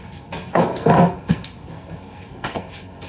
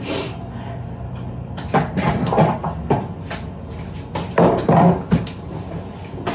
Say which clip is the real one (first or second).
second